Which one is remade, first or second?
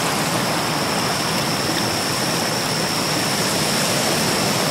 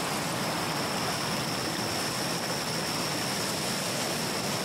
first